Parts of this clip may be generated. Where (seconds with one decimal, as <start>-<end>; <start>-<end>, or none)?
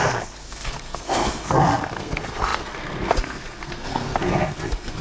0.0-5.0